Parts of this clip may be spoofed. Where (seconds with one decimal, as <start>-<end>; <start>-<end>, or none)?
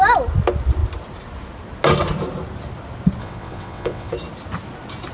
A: 3.2-4.1